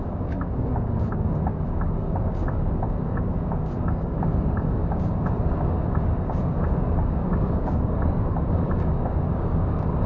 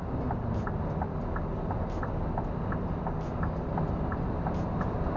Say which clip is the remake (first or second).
first